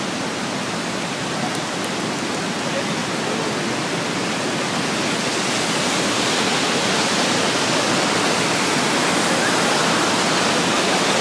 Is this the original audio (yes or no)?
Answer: yes